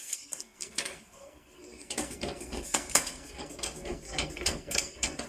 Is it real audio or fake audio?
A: fake